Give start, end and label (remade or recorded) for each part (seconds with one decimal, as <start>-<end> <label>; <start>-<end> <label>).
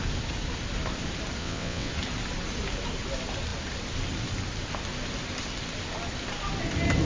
0.0-1.4 recorded; 1.4-1.9 remade; 1.9-7.0 recorded